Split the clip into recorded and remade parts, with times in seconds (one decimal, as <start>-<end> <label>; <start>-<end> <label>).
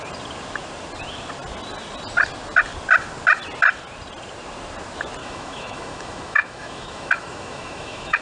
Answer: 0.0-5.2 recorded; 5.2-8.2 remade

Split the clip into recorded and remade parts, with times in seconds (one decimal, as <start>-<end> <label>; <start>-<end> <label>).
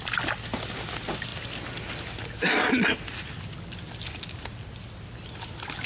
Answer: 0.0-5.9 recorded